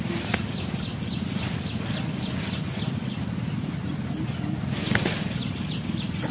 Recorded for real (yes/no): yes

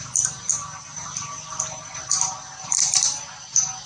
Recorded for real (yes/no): yes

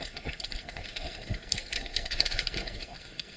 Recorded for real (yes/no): no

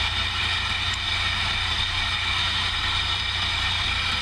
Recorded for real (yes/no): yes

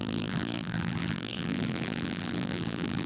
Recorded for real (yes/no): no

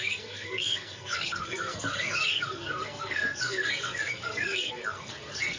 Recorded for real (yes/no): no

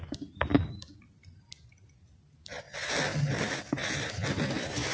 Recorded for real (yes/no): yes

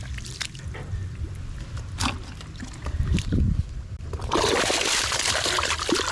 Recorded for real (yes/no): yes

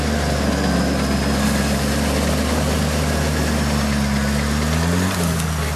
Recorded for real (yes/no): yes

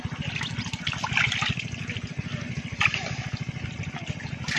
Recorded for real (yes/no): yes